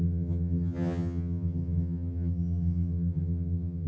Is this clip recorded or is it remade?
remade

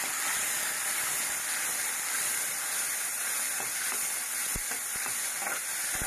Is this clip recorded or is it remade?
remade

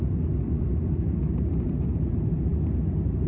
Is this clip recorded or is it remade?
recorded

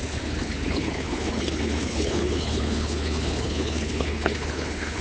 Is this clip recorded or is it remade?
remade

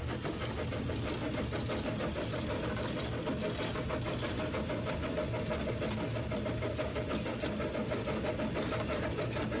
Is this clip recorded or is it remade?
recorded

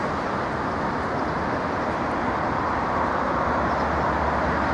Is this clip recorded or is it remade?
recorded